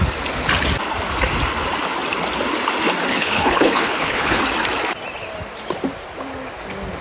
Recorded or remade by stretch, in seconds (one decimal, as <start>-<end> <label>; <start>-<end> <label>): 0.0-3.1 recorded; 3.1-4.4 remade; 4.4-7.0 recorded